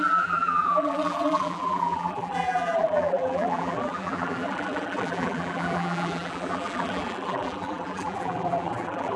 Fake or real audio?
fake